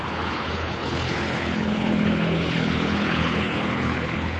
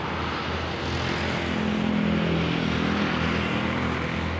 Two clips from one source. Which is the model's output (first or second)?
first